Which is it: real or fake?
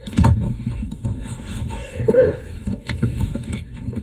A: fake